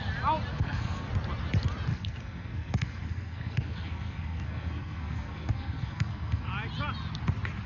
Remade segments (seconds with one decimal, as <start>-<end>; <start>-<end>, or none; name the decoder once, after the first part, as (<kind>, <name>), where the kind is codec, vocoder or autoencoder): 0.5-1.1 (codec, SNAC); 1.9-6.5